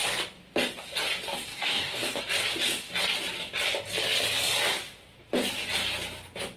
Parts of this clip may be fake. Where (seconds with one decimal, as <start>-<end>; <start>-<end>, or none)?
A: 1.5-2.2